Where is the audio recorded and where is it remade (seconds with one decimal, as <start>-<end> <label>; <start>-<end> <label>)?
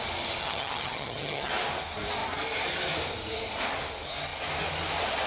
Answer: 0.0-0.4 recorded; 0.4-1.5 remade; 1.5-5.3 recorded